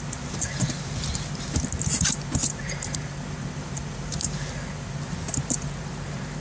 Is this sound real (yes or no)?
yes